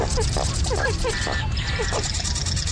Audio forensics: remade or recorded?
remade